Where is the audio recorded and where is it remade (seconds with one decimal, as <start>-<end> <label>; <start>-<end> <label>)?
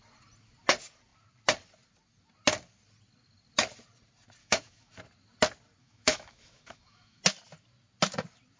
0.0-4.4 recorded; 4.4-4.9 remade; 4.9-5.8 recorded; 5.8-7.2 remade; 7.2-8.6 recorded